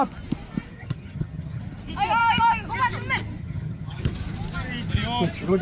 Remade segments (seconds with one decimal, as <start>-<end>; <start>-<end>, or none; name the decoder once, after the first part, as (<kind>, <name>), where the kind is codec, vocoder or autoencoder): 0.7-1.6 (vocoder, HiFi-GAN); 3.4-4.0